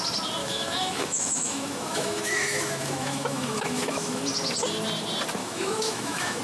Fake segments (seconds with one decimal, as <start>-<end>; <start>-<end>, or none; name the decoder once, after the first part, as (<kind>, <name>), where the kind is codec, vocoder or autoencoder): 0.4-4.2 (autoencoder, DAC-VAE); 5.4-6.4